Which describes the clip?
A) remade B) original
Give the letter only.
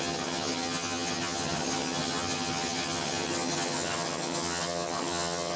A